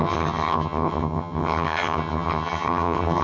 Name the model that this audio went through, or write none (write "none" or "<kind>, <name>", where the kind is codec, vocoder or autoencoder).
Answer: vocoder, HiFi-GAN